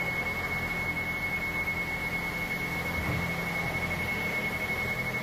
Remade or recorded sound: recorded